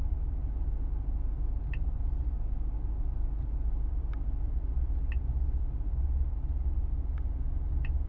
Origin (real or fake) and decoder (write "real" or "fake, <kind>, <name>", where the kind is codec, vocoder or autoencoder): real